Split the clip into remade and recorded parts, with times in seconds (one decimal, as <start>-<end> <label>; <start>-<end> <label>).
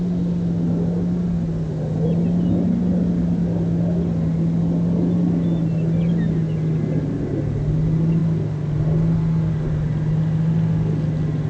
0.0-11.5 recorded